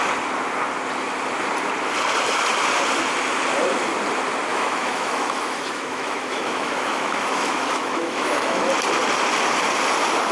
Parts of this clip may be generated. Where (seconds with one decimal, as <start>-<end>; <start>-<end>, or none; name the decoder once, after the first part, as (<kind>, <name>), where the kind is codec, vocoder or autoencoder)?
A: 4.5-8.7 (autoencoder, DAC-VAE)